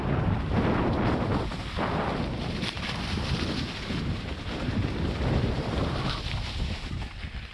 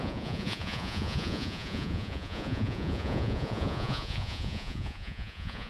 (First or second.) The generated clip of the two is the second